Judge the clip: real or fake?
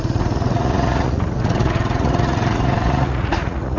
fake